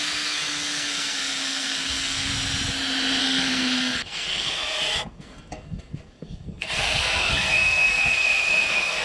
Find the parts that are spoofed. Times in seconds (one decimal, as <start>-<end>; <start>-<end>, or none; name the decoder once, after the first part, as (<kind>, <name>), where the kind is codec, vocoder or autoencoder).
0.0-2.3 (codec, SNAC); 3.2-9.0